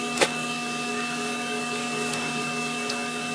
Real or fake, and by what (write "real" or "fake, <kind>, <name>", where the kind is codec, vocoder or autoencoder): fake, codec, DAC